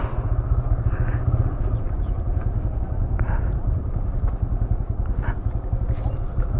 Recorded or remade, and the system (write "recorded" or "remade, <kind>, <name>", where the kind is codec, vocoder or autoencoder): recorded